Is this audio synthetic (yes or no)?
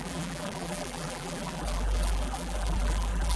yes